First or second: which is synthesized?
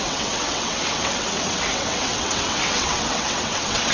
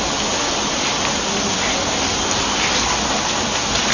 first